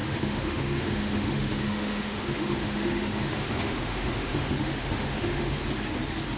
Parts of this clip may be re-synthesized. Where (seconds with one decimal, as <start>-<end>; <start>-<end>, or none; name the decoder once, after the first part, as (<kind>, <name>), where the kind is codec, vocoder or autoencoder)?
0.0-5.6 (autoencoder, DAC-VAE)